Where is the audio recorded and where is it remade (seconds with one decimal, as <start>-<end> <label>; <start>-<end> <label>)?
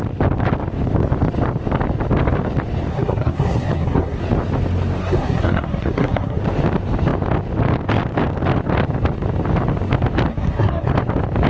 0.0-2.9 recorded; 2.9-4.2 remade; 4.2-5.0 recorded; 5.0-6.4 remade; 6.4-10.3 recorded; 10.3-10.9 remade; 10.9-11.5 recorded